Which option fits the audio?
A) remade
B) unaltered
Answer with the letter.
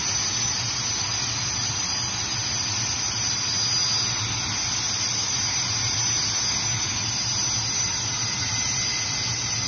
B